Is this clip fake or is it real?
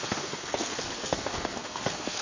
fake